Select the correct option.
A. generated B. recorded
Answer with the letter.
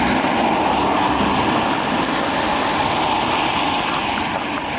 B